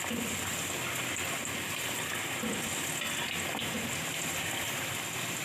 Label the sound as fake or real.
real